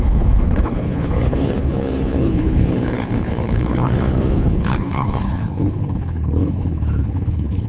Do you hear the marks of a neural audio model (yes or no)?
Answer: yes